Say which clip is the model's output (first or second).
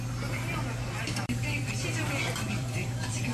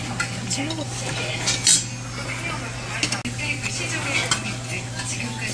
first